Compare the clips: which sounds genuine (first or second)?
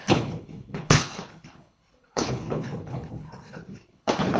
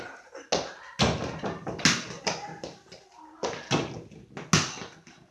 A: second